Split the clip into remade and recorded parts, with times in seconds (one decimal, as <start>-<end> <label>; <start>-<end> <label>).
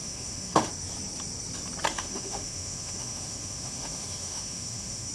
0.0-0.7 remade; 0.7-1.9 recorded; 1.9-5.1 remade